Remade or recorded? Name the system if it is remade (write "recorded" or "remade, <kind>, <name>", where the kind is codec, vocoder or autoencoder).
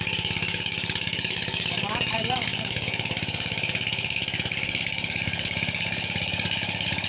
remade, codec, DAC